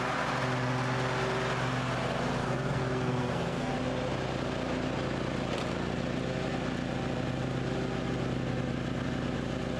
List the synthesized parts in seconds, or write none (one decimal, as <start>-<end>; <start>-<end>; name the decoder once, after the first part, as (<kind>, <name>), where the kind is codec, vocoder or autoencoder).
2.4-3.7 (codec, SNAC)